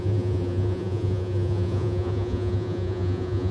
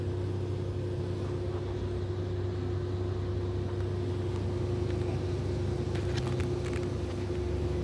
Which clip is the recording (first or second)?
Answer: second